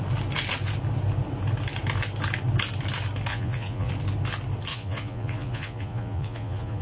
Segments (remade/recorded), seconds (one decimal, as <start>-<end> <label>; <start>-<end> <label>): 0.0-3.3 recorded; 3.3-3.9 remade; 3.9-4.7 recorded; 4.7-6.8 remade